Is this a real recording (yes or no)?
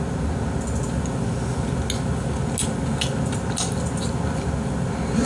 yes